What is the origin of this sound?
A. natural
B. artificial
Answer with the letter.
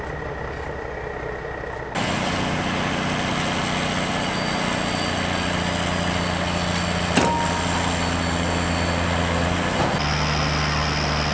A